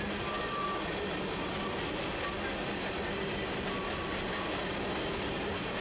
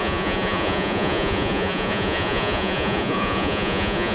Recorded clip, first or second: first